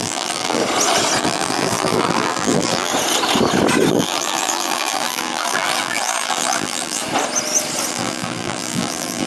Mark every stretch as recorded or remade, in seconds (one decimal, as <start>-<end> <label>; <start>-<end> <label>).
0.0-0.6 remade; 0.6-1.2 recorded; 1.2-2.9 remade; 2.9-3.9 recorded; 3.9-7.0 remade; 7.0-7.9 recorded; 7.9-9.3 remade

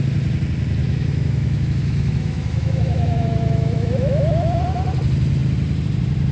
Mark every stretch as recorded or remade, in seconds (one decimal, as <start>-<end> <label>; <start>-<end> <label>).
0.0-0.8 recorded; 0.8-4.6 remade; 4.6-6.3 recorded

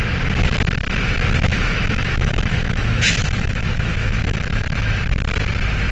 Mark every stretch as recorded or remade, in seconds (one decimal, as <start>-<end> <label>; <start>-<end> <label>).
0.0-1.5 recorded; 1.5-5.0 remade; 5.0-5.9 recorded

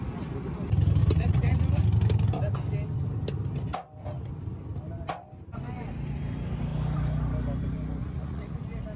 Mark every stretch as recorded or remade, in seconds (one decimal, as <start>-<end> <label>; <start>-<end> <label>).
0.0-1.0 recorded; 1.0-1.8 remade; 1.8-8.0 recorded; 8.0-8.5 remade; 8.5-9.0 recorded

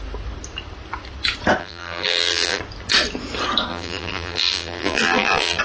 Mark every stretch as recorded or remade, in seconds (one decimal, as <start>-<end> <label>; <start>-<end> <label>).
0.0-1.6 recorded; 1.6-2.6 remade; 2.6-3.7 recorded; 3.7-5.6 remade

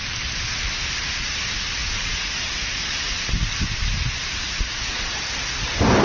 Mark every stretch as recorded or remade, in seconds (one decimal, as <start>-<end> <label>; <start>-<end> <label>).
0.0-6.0 recorded